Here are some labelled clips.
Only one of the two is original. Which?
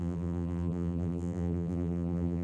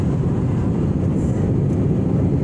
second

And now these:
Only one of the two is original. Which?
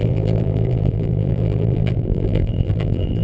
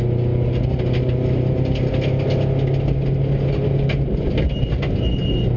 second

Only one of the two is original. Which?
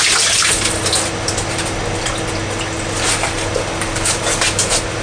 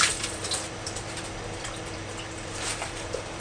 first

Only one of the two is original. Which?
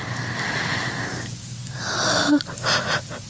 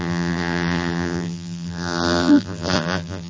first